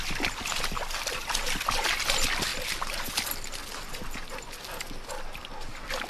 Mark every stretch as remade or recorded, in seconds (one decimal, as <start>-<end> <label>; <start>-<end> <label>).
0.0-6.1 recorded